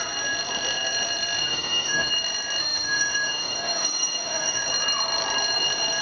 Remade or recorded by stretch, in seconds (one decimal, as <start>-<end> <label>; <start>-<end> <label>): 0.0-1.4 recorded; 1.4-2.1 remade; 2.1-2.6 recorded; 2.6-4.6 remade; 4.6-6.0 recorded